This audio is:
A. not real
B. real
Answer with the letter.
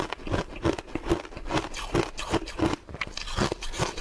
B